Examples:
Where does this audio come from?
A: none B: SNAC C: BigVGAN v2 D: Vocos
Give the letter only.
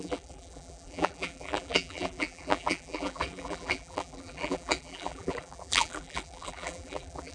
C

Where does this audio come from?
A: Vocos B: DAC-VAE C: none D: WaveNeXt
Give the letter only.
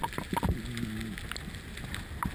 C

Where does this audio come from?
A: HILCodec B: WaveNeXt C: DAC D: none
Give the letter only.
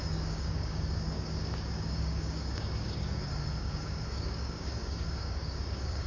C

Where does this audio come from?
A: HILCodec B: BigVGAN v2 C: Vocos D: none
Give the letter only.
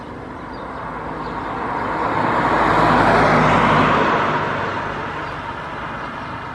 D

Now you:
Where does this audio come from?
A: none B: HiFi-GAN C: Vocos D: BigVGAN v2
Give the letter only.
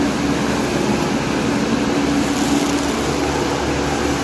A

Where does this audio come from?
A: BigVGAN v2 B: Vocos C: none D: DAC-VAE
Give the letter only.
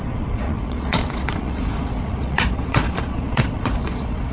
B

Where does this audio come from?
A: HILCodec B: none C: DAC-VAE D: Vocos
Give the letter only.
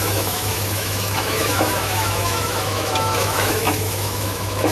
C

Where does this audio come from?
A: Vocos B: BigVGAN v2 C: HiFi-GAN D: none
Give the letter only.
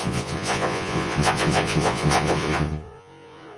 A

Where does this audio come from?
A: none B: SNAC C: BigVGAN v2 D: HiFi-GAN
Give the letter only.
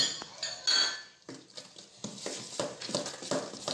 A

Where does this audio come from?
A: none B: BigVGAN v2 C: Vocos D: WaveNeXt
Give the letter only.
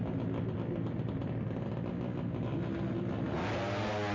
A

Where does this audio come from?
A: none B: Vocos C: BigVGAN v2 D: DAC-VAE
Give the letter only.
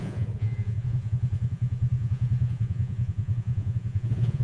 B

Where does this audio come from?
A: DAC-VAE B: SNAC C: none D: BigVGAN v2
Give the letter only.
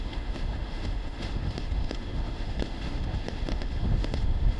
A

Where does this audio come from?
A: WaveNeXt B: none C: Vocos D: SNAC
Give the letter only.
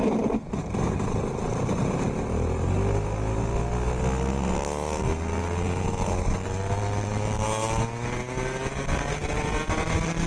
B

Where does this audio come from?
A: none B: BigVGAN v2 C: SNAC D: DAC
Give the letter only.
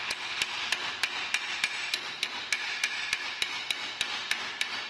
A